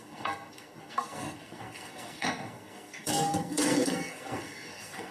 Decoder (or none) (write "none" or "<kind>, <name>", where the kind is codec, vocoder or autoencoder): codec, SNAC